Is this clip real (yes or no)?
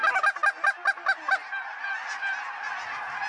yes